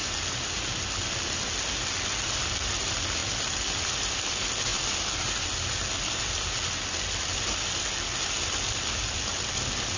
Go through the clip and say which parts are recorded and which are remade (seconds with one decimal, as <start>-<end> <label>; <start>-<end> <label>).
0.0-10.0 recorded